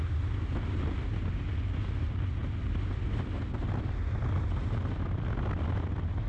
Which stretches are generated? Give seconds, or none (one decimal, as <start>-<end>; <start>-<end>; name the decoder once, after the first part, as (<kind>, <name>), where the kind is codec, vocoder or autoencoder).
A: none